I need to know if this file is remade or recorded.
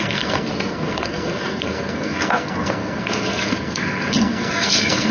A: remade